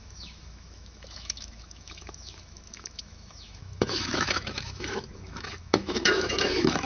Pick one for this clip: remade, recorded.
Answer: remade